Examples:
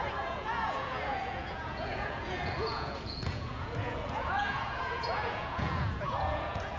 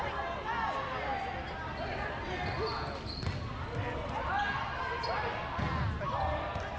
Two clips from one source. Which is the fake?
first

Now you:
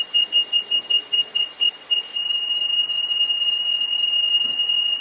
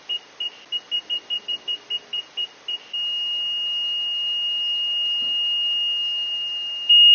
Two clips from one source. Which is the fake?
first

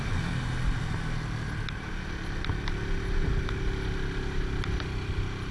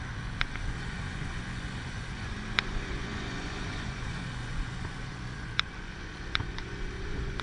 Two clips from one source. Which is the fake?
second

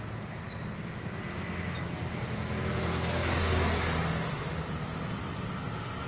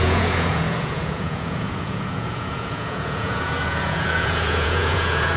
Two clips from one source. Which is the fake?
second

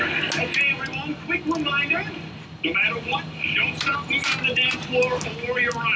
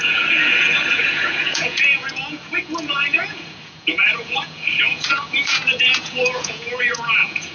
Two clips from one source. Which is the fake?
second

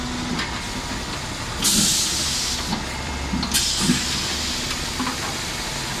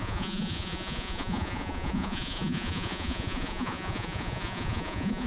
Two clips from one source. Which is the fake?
second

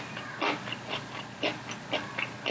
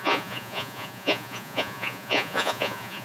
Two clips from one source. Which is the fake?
second